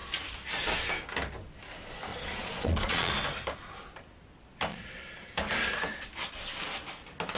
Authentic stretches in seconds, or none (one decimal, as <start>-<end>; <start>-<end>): 0.0-2.1; 3.1-4.7; 5.3-7.4